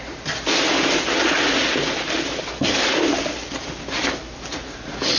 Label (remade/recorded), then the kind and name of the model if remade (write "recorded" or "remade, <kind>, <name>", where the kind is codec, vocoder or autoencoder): recorded